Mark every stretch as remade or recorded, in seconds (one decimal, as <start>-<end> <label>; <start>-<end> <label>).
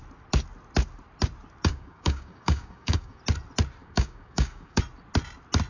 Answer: 0.0-1.7 recorded; 1.7-3.2 remade; 3.2-3.8 recorded; 3.8-4.8 remade; 4.8-5.7 recorded